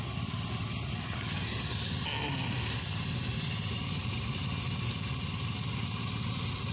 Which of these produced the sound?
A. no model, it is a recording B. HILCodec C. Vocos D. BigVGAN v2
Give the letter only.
A